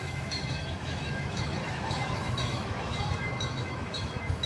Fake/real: fake